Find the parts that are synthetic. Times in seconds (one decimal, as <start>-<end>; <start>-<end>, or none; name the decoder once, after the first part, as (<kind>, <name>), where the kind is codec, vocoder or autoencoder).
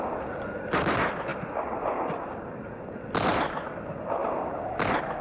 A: none